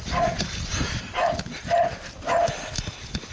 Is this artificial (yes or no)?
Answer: no